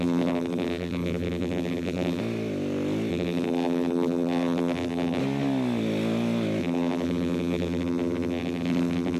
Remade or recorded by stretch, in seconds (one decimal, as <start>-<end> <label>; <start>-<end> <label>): 0.0-2.2 remade; 2.2-3.1 recorded; 3.1-5.2 remade; 5.2-6.6 recorded; 6.6-9.2 remade